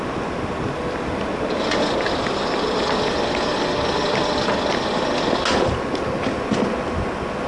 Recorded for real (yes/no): yes